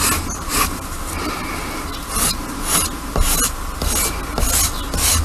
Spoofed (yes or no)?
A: no